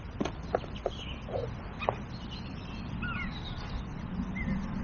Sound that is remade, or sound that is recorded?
recorded